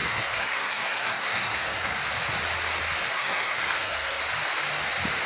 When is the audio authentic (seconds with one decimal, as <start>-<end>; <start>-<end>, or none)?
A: 2.0-3.0; 4.2-5.3